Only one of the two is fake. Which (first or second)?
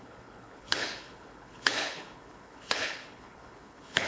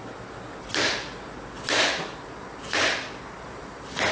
first